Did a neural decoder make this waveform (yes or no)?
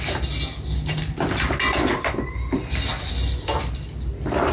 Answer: no